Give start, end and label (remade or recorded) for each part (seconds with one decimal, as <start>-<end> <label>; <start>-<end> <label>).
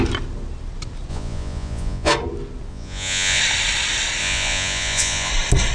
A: 0.0-1.1 recorded; 1.1-2.1 remade; 2.1-2.7 recorded; 2.7-3.4 remade; 3.4-4.2 recorded; 4.2-5.3 remade; 5.3-5.7 recorded